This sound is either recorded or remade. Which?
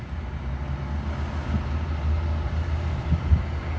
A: recorded